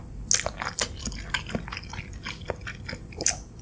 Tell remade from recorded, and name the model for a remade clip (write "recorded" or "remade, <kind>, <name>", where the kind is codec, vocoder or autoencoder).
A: recorded